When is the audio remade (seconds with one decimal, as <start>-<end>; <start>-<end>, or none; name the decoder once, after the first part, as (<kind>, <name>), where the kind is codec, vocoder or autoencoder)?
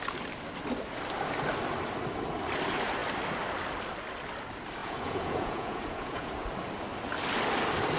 4.8-6.3 (vocoder, Vocos)